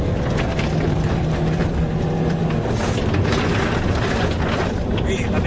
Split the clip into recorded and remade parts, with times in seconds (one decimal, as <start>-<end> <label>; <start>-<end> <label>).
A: 0.0-1.6 recorded; 1.6-2.4 remade; 2.4-5.5 recorded